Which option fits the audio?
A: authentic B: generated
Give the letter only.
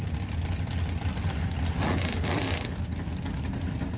A